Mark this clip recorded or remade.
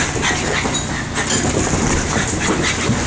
recorded